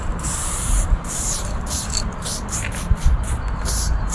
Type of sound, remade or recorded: remade